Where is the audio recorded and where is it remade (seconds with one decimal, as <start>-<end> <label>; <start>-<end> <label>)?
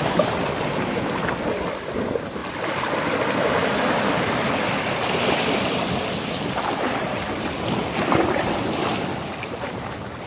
0.0-10.3 recorded